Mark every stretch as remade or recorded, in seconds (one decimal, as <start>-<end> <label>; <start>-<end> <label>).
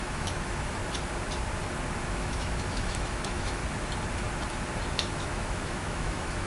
0.0-0.8 remade; 0.8-2.1 recorded; 2.1-3.6 remade; 3.6-4.9 recorded; 4.9-6.5 remade